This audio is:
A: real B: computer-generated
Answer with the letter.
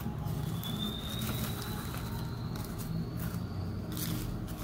A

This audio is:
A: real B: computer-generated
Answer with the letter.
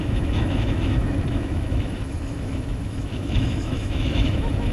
B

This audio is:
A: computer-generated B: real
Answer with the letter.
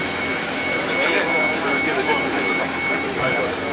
A